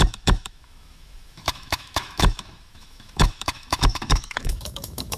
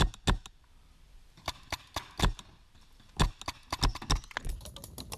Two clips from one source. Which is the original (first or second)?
second